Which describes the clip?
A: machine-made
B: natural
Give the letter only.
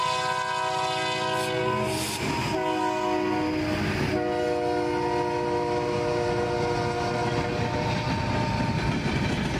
B